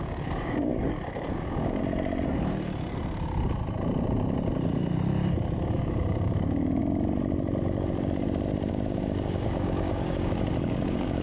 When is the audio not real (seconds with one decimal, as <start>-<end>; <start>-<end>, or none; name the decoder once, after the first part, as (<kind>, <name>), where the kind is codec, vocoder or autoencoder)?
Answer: 0.0-0.7 (codec, DAC); 1.3-1.8; 5.7-6.8; 8.7-11.2